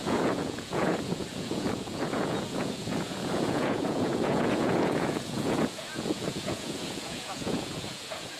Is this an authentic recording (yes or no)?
no